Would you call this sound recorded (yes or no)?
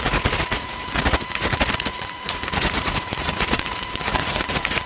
no